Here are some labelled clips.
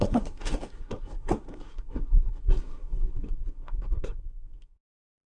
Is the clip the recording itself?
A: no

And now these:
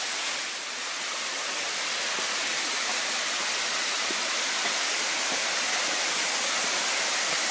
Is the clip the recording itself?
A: yes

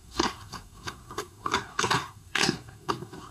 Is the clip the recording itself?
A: no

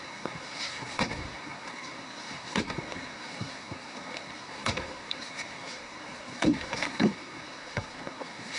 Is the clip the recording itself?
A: no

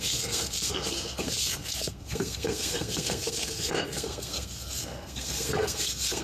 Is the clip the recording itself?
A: no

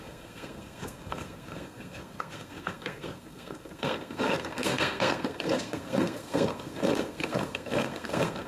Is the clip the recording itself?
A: no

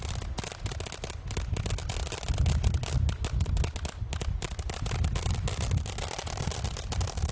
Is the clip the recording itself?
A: yes